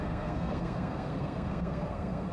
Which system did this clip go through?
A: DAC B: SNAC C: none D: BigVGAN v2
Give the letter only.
B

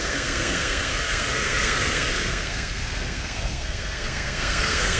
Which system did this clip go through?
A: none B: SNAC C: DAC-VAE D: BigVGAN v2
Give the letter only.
B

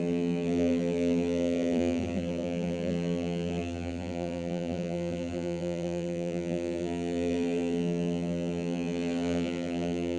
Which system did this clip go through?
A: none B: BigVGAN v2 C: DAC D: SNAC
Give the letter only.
B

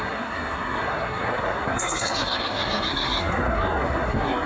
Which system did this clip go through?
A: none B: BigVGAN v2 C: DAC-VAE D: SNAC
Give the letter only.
D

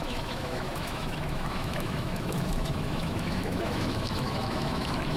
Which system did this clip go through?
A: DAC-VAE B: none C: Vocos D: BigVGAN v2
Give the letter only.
A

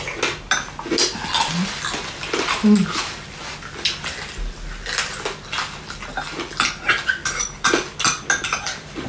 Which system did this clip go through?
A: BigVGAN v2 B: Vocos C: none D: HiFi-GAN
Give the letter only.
C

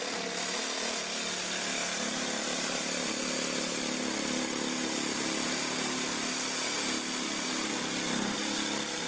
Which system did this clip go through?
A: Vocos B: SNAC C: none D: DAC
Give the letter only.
C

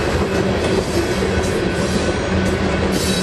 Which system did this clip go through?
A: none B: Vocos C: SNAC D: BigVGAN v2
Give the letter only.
A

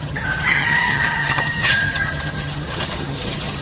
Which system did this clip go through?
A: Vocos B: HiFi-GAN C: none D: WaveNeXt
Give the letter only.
B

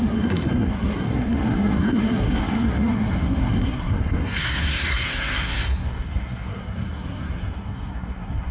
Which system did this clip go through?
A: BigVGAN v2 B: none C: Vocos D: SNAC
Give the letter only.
D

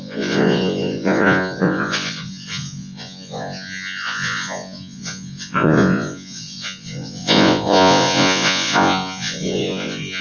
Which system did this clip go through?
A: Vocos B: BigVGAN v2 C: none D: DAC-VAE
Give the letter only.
A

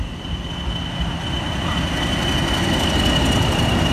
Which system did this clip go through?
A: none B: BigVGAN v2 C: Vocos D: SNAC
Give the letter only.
A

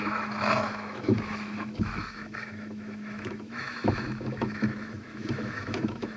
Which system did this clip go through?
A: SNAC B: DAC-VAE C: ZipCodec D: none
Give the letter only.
B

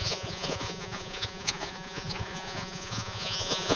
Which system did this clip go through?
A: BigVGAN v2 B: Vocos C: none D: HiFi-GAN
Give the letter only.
B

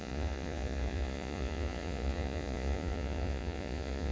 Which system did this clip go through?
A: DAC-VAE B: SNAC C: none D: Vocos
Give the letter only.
D